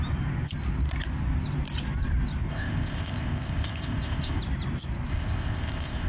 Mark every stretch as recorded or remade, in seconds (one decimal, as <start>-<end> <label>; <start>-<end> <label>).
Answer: 0.0-2.5 recorded; 2.5-4.4 remade; 4.4-5.1 recorded; 5.1-6.1 remade